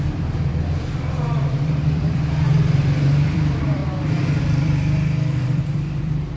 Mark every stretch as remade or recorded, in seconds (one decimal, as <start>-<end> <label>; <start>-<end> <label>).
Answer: 0.0-3.8 remade; 3.8-4.4 recorded; 4.4-6.4 remade